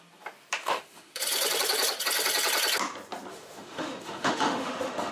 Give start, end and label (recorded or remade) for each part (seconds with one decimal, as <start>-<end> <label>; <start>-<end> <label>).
0.0-0.6 recorded; 0.6-1.2 remade; 1.2-3.3 recorded; 3.3-5.1 remade